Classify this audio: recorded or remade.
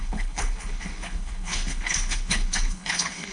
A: remade